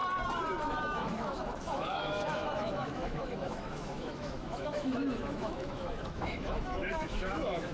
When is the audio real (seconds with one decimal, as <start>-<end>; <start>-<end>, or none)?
0.0-0.6